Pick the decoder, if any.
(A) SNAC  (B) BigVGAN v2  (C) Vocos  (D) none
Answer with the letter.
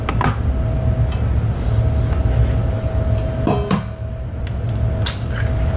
D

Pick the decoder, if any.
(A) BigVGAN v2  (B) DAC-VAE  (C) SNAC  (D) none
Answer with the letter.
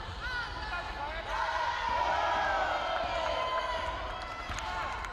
A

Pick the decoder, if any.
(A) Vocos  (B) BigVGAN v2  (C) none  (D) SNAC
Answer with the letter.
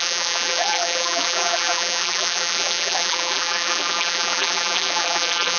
B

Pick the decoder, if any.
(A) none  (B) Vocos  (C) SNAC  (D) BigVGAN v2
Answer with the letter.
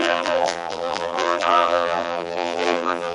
D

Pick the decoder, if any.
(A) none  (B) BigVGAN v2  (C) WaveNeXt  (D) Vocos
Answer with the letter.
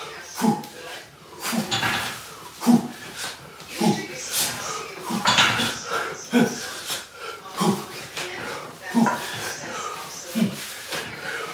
B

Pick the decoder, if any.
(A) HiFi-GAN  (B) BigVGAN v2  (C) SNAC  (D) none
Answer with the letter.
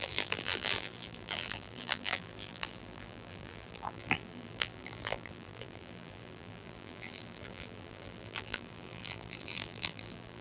B